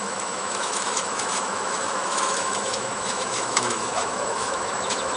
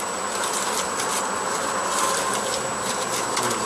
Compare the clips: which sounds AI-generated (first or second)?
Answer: first